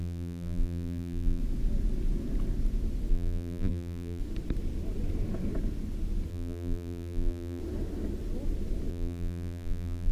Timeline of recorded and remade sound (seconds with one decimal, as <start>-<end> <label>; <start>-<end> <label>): 0.0-1.4 remade; 1.4-3.1 recorded; 3.1-4.2 remade; 4.2-6.3 recorded; 6.3-7.6 remade; 7.6-8.9 recorded; 8.9-10.1 remade